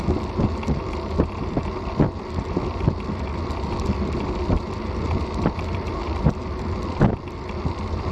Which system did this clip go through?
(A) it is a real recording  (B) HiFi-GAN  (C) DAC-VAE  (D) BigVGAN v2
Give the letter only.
A